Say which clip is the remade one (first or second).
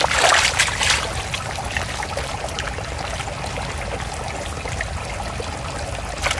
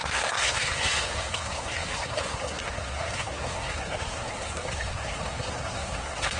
second